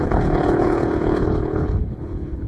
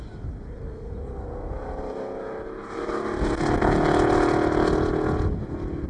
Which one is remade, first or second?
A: first